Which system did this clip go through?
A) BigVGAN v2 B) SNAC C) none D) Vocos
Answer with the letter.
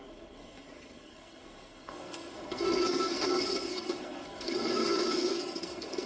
B